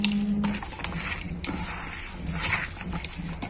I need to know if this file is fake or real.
real